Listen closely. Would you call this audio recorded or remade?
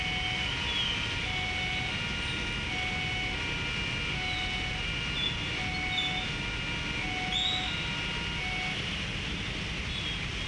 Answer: recorded